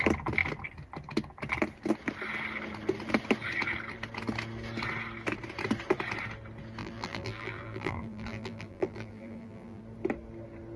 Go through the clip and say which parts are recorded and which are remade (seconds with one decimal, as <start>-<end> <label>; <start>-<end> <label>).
0.0-6.8 recorded; 6.8-9.8 remade; 9.8-10.8 recorded